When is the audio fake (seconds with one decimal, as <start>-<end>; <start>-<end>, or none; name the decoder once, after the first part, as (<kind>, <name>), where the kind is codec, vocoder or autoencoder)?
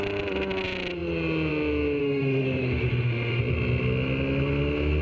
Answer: 2.0-3.4 (autoencoder, DAC-VAE)